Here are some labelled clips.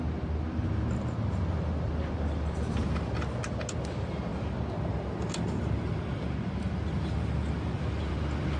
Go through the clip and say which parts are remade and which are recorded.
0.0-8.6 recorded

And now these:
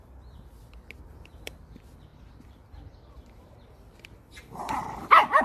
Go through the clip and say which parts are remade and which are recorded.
0.0-2.1 recorded; 2.1-5.4 remade

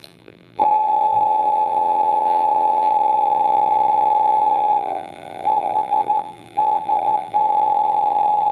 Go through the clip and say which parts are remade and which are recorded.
0.0-8.5 remade

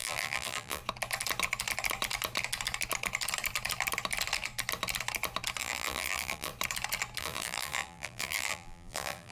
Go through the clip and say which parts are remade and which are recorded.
0.0-0.8 remade; 0.8-5.6 recorded; 5.6-6.5 remade; 6.5-7.2 recorded; 7.2-9.3 remade

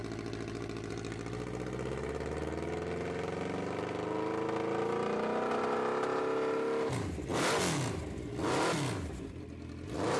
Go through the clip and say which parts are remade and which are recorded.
0.0-10.2 recorded

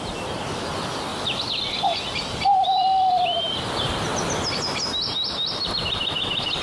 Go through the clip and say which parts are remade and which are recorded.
0.0-6.6 recorded